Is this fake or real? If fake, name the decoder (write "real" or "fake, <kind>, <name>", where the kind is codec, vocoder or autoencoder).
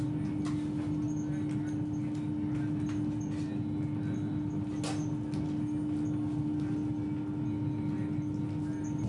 real